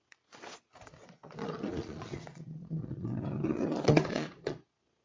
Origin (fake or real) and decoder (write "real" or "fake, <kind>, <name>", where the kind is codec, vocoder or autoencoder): fake, vocoder, Vocos